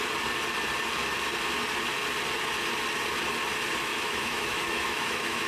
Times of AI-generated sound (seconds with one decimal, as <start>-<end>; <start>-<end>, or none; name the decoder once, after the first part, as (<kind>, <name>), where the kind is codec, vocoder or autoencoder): 3.9-5.5 (autoencoder, DAC-VAE)